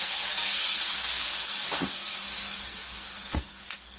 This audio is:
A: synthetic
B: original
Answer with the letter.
A